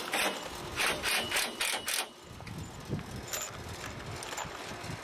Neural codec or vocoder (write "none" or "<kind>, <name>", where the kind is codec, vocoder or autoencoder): none